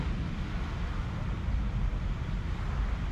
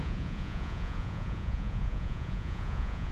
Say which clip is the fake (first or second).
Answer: second